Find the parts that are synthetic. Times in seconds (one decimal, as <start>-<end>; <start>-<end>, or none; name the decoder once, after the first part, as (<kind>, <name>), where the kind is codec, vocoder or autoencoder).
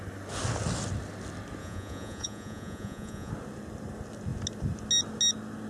1.6-3.3 (vocoder, Vocos)